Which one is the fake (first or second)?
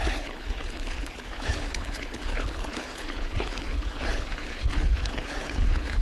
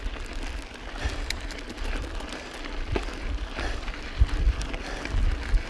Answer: first